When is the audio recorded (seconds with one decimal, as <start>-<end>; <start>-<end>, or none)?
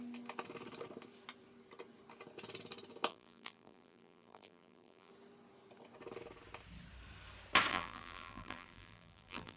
0.0-3.1; 5.1-7.7